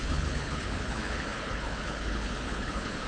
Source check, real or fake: fake